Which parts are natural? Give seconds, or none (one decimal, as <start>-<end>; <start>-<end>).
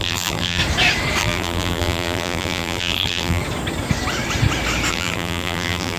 0.6-1.2; 3.4-4.9